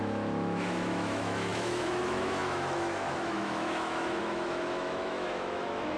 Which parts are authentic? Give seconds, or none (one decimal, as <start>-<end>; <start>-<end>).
none